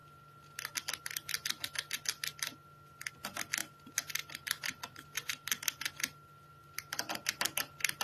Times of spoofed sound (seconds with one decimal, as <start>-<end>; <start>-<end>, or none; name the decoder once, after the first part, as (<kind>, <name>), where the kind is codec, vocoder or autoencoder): none